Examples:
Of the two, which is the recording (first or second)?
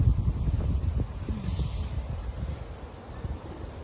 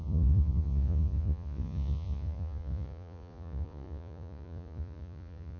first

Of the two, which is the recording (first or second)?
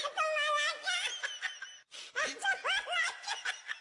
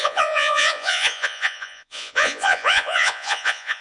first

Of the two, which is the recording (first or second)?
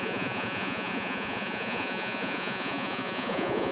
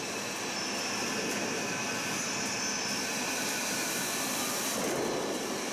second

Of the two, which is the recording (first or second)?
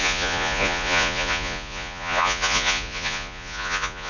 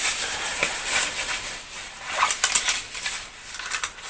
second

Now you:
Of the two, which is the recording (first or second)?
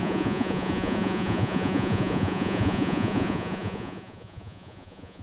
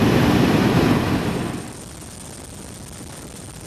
second